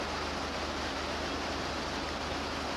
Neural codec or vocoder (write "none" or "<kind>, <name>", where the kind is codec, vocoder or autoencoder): none